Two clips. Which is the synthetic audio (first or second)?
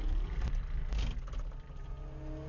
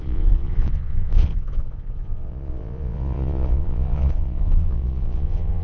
second